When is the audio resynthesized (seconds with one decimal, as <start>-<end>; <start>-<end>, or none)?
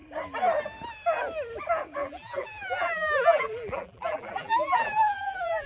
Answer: 2.0-5.7